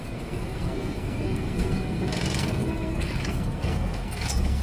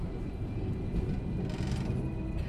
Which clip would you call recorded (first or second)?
second